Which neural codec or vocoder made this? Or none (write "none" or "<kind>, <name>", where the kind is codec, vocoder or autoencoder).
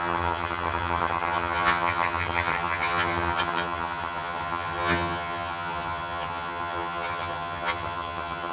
vocoder, HiFi-GAN